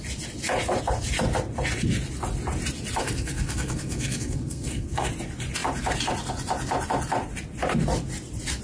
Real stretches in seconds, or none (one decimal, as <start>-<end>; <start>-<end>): 0.0-3.0; 5.1-8.6